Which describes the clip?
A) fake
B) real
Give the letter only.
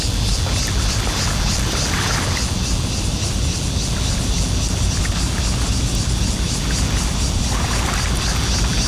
B